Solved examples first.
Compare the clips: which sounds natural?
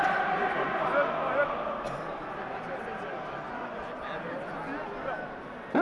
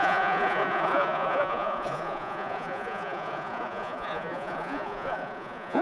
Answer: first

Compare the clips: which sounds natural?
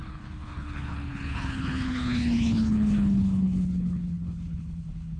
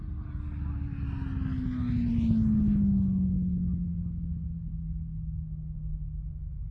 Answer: second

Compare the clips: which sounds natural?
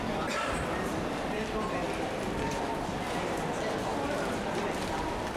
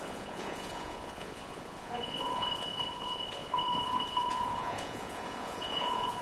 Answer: first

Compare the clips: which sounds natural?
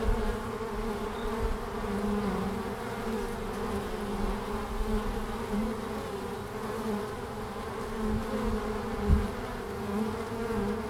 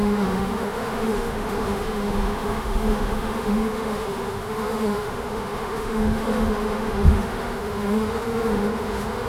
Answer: first